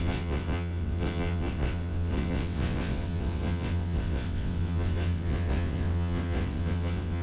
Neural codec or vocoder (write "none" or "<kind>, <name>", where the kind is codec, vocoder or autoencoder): vocoder, WaveNeXt